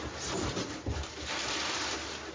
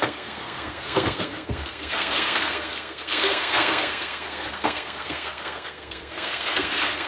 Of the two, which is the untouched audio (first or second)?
first